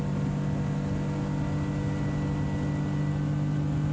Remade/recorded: recorded